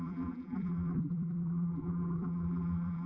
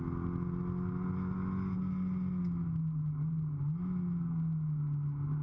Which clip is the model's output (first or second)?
first